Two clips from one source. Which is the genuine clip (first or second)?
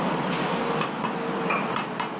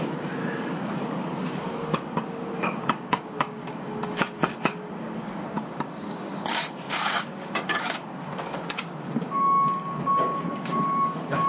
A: first